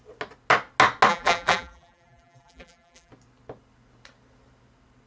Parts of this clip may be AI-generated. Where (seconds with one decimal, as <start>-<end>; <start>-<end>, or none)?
1.1-3.1